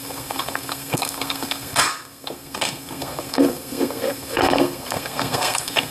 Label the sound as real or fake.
fake